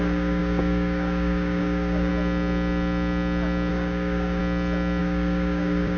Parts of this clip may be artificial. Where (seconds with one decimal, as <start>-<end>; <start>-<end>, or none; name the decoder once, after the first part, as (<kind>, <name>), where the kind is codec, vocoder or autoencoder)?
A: 0.0-2.1 (codec, DAC); 3.7-4.4; 5.0-6.0